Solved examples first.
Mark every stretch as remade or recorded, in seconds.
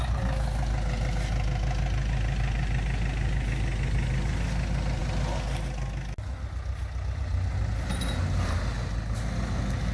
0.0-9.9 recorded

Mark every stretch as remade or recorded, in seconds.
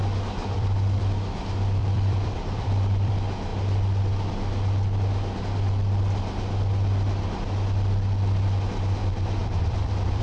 0.0-0.4 recorded; 0.4-1.0 remade; 1.0-1.8 recorded; 1.8-3.1 remade; 3.1-9.4 recorded; 9.4-10.2 remade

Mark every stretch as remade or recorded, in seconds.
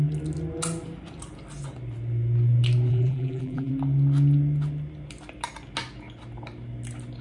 0.0-2.9 recorded; 2.9-3.7 remade; 3.7-7.2 recorded